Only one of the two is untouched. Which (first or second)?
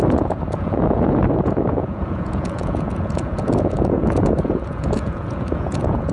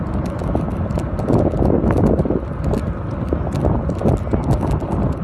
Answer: second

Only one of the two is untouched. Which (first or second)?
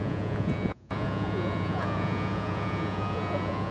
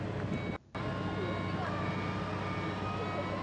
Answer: second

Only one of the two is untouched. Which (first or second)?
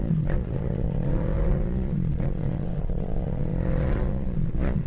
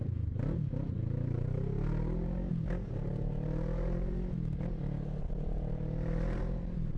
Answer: second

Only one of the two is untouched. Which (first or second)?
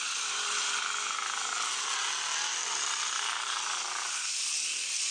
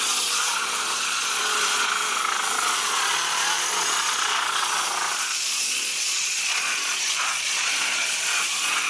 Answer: first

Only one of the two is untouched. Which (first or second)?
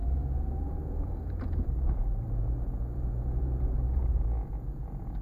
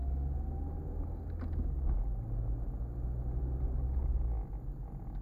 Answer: second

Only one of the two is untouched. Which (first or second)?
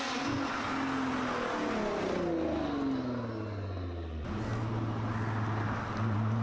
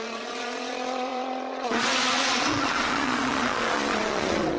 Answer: first